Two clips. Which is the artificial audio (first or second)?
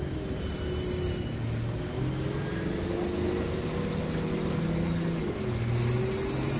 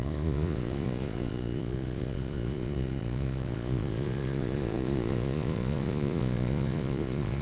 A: second